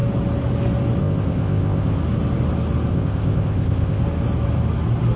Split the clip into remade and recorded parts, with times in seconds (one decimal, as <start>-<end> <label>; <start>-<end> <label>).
0.0-1.0 recorded; 1.0-2.0 remade; 2.0-2.9 recorded; 2.9-4.0 remade; 4.0-5.2 recorded